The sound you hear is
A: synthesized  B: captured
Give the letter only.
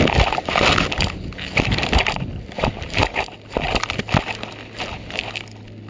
B